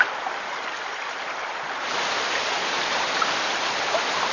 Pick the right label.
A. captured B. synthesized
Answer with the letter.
A